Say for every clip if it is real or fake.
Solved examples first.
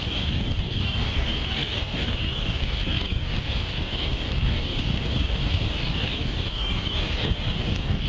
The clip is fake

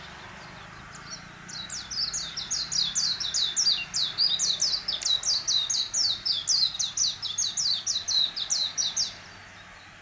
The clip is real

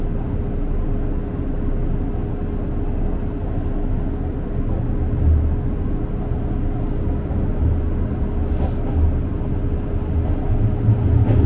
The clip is real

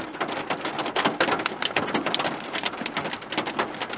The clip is real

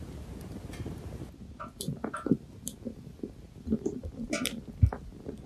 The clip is real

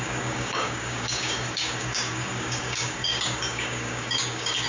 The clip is fake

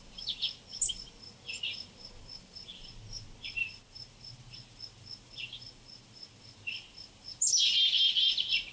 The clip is real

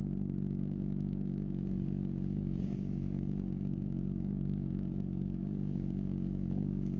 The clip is fake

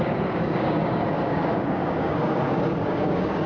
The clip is fake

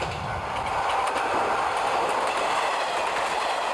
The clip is real